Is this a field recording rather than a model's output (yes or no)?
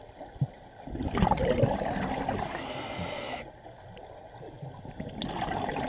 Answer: yes